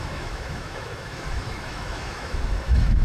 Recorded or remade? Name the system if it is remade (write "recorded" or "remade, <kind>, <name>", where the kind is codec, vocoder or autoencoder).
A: remade, autoencoder, DAC-VAE